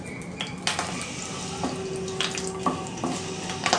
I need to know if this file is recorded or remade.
recorded